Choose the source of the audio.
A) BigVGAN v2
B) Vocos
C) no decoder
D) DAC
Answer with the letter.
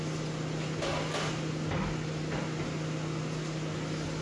C